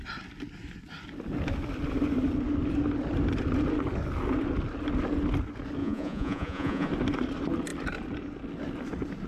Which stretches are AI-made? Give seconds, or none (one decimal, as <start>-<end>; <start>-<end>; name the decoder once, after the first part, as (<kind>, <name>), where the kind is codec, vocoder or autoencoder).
5.8-6.9 (vocoder, Vocos)